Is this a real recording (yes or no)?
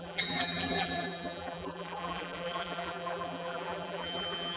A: no